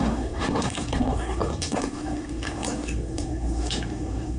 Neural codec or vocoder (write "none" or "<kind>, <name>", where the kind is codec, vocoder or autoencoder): codec, SNAC